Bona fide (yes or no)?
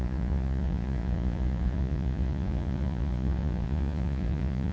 no